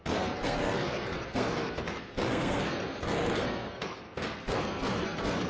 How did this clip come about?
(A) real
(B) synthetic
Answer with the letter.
B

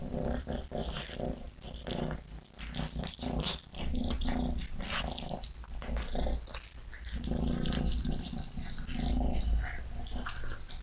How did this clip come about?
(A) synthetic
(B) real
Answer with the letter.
B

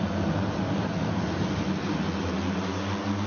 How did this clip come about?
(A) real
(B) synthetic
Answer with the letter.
A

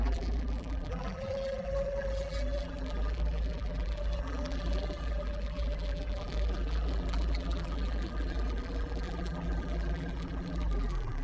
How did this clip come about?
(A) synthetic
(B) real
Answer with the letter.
A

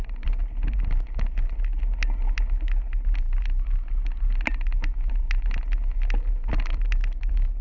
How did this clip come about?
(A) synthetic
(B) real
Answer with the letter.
B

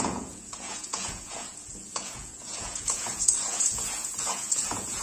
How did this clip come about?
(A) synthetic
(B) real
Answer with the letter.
A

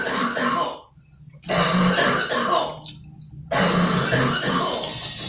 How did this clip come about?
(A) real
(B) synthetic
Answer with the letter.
A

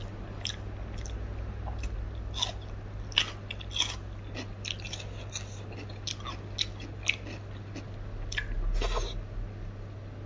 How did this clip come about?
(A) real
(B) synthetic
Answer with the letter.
A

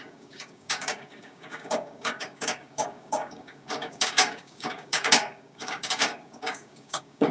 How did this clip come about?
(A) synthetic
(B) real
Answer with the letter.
A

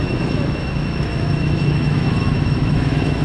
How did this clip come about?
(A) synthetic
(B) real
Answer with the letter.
A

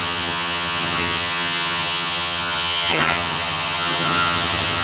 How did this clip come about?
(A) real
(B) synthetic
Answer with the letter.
B